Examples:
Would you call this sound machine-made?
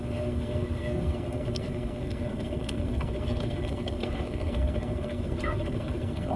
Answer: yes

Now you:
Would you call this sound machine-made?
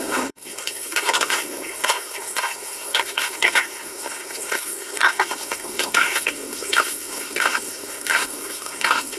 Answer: yes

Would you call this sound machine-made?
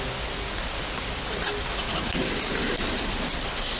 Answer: no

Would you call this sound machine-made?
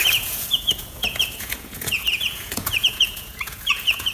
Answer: yes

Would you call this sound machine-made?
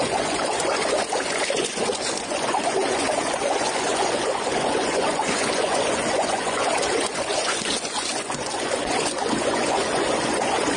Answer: yes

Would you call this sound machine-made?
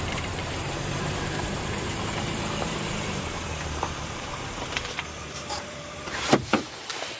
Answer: yes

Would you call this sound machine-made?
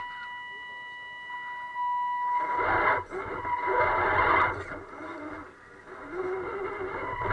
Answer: no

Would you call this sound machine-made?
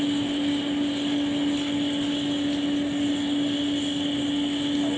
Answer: no